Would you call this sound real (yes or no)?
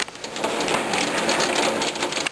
yes